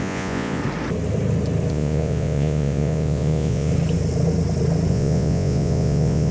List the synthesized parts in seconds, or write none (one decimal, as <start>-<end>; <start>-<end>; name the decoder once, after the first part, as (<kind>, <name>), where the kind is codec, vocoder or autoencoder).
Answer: 0.0-0.6 (vocoder, Vocos); 1.7-3.7; 4.9-6.3